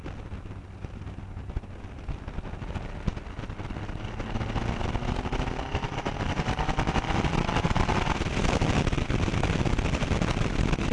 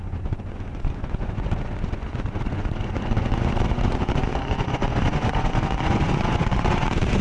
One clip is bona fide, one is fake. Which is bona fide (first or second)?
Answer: first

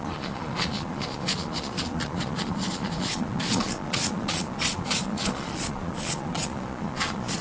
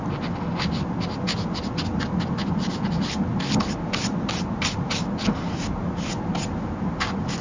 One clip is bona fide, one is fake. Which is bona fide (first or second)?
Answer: second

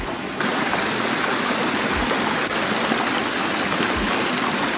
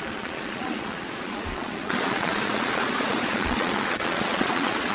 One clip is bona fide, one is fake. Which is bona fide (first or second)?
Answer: first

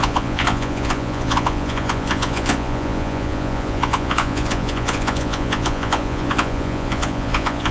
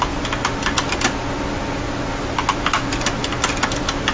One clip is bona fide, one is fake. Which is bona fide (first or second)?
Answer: second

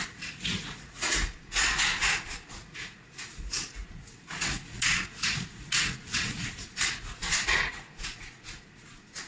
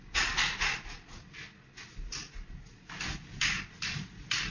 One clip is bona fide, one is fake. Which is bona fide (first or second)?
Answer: second